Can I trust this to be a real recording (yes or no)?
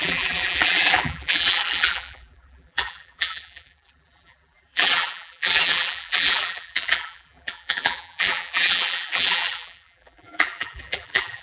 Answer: no